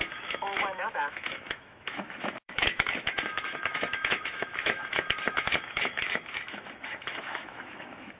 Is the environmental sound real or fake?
fake